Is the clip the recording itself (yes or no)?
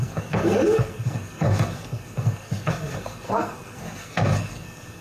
no